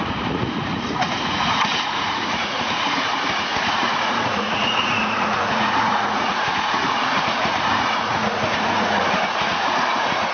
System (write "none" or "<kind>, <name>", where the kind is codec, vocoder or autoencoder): vocoder, Vocos